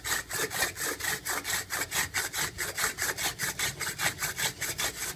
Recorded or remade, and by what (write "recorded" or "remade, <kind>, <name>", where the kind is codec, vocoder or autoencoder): recorded